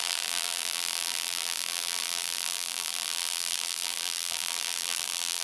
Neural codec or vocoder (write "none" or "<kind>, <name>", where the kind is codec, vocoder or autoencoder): vocoder, BigVGAN v2